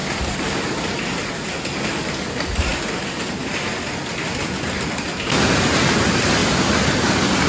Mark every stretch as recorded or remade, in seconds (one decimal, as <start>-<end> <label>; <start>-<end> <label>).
0.0-7.5 recorded